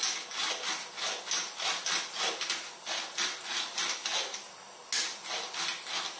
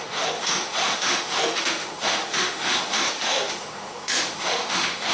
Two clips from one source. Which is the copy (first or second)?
second